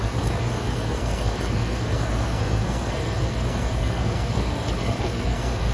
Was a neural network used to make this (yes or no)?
yes